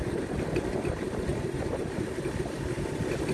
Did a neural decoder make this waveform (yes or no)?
yes